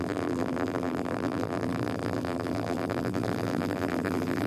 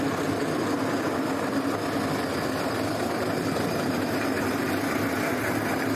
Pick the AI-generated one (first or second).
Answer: first